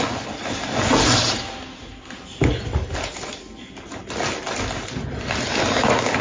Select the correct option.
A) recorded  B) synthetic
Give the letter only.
A